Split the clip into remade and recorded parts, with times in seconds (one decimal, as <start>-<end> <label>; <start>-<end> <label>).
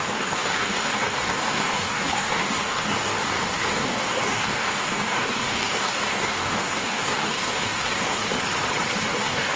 0.0-8.3 remade; 8.3-9.1 recorded; 9.1-9.6 remade